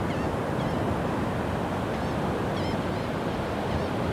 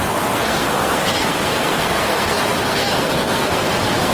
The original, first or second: first